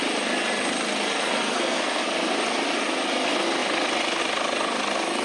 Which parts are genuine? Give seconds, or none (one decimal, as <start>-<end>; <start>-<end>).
0.0-1.4; 2.0-5.2